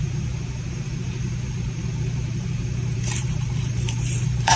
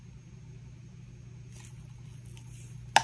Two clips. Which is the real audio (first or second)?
second